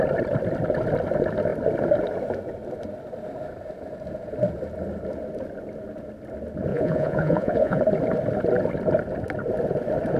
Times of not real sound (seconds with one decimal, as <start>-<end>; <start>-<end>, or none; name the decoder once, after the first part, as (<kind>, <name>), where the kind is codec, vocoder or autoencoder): 6.7-7.8 (vocoder, Vocos)